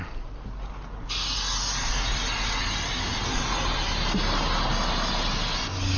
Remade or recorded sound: recorded